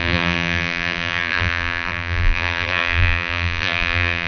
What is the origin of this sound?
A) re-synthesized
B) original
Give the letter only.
A